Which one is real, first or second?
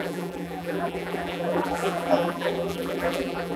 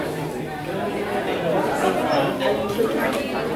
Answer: second